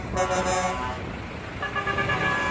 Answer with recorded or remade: recorded